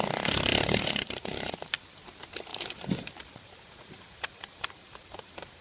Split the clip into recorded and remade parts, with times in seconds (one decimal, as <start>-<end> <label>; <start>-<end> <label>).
0.0-0.5 recorded; 0.5-1.8 remade; 1.8-2.5 recorded; 2.5-5.6 remade